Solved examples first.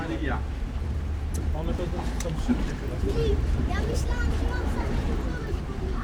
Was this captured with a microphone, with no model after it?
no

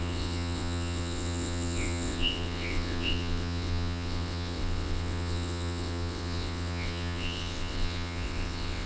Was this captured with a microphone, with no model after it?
no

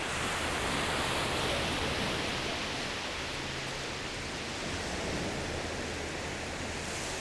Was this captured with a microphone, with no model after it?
yes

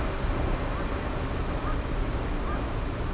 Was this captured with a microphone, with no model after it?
yes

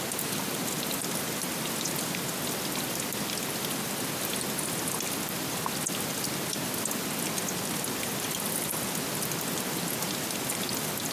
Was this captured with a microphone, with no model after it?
yes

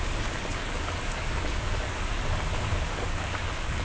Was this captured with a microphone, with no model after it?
no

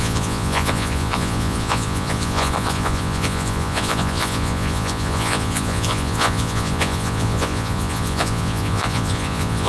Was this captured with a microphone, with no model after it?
no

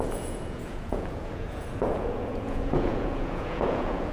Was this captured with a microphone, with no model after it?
no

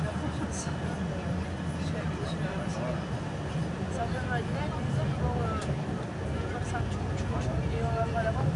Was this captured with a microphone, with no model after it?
yes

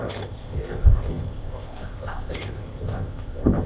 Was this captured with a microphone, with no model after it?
no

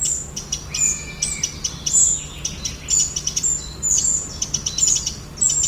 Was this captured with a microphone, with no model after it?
yes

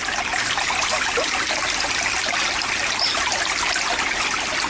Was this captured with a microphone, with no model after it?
yes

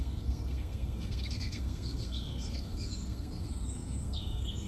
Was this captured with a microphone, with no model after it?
no